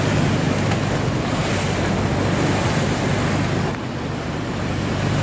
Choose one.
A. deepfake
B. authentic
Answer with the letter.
B